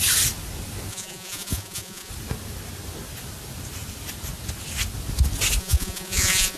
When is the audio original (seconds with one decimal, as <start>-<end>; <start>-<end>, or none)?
0.0-0.9; 2.1-5.6